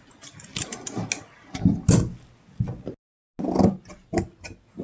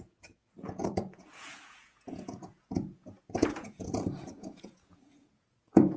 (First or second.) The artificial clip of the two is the second